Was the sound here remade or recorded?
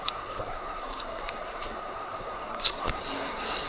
remade